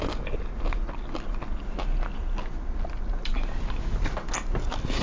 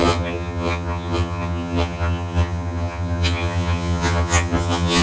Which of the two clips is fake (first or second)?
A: second